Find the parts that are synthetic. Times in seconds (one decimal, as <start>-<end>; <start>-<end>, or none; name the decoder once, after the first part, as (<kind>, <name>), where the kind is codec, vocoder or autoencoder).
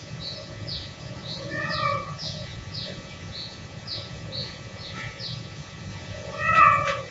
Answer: 0.0-7.1 (vocoder, Vocos)